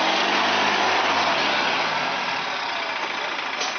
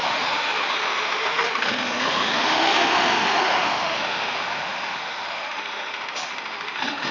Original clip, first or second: first